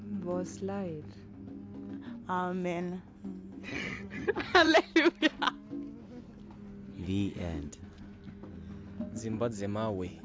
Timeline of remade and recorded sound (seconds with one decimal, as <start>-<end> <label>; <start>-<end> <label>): 0.0-3.7 recorded; 3.7-4.7 remade; 4.7-10.2 recorded